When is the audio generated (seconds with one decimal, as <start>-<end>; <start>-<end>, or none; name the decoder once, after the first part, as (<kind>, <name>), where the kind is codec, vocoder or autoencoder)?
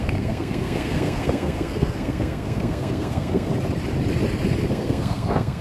0.0-3.5 (codec, SNAC); 4.7-5.6